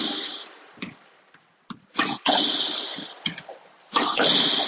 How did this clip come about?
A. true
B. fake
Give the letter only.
B